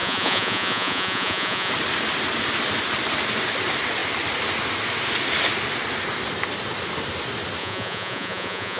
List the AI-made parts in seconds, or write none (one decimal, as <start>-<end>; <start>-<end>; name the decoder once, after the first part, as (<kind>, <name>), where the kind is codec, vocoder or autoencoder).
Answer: 0.0-1.7 (vocoder, Vocos); 7.6-8.8